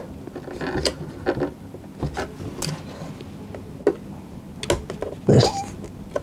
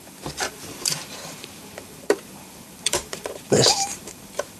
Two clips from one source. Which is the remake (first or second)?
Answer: second